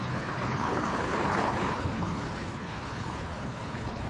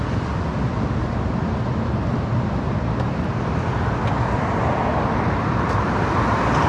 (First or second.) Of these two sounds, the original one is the second